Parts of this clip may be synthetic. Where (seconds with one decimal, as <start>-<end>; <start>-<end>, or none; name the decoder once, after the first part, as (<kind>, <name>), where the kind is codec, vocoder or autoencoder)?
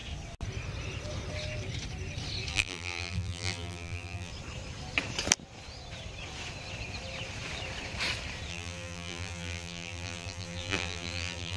2.5-4.3 (vocoder, BigVGAN v2); 8.5-11.6